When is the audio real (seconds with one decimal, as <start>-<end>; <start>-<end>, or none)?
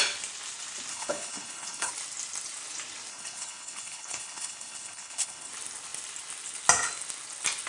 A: 0.0-0.9; 1.9-3.1; 5.5-7.7